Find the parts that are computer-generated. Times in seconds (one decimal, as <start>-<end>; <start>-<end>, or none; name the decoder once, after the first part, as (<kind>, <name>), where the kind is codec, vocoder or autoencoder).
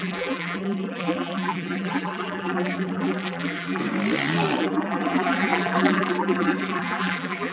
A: 0.0-3.8 (vocoder, BigVGAN v2); 4.6-7.5